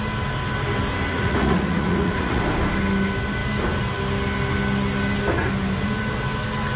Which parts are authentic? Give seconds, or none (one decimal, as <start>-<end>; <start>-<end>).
0.0-1.1; 2.4-6.8